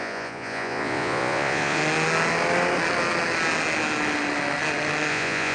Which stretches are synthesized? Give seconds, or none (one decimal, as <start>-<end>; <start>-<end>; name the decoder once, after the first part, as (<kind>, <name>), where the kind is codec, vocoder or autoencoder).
0.0-1.8 (vocoder, Vocos); 5.1-5.5